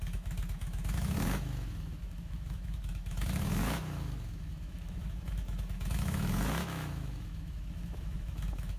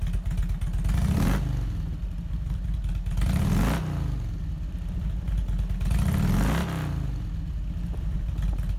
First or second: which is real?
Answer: second